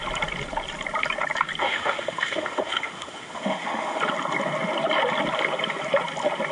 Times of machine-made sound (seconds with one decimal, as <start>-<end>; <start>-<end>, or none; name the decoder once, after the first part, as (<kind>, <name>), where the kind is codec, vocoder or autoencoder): 1.6-4.0 (autoencoder, DAC-VAE)